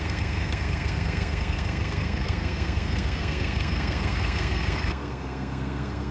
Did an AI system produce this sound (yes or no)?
yes